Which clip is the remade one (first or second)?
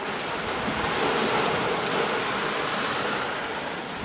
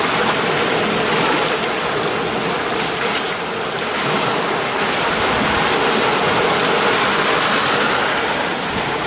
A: first